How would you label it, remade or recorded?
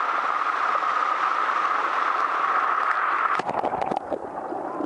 recorded